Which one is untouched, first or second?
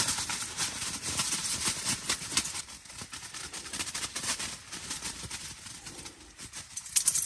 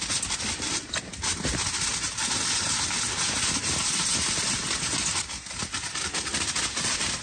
second